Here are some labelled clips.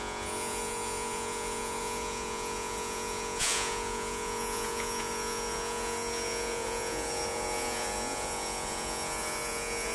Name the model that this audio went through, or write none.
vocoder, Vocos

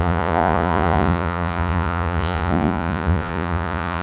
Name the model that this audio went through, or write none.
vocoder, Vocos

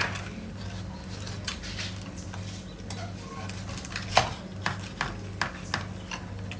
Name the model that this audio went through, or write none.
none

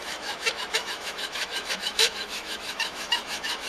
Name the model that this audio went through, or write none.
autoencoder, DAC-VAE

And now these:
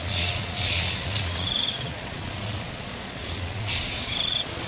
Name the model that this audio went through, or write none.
vocoder, Vocos